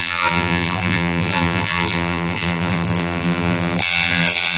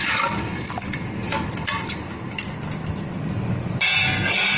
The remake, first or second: first